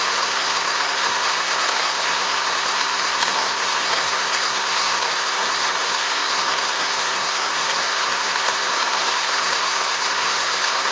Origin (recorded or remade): remade